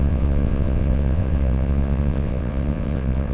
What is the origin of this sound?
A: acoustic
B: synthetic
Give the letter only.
B